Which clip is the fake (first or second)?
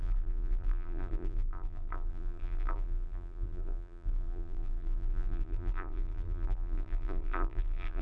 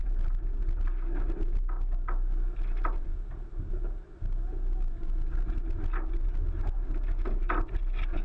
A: first